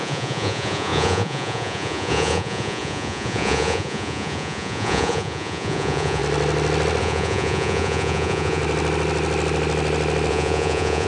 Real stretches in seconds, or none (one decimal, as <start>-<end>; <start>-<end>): 6.2-7.0; 8.6-10.3